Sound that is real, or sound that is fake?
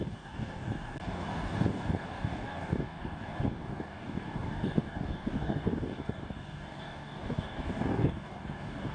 fake